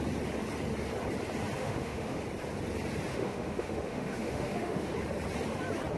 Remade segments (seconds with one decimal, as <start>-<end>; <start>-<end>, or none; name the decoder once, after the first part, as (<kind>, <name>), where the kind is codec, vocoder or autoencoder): 1.6-2.2 (autoencoder, DAC-VAE); 3.1-4.9